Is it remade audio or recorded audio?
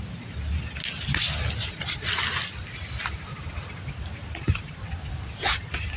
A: recorded